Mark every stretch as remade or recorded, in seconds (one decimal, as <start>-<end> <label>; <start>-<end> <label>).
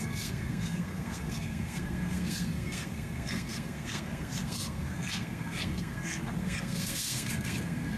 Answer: 0.0-8.0 remade